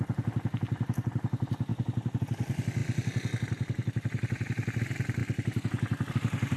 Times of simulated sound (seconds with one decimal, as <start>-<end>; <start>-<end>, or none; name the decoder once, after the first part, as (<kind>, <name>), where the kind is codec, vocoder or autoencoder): none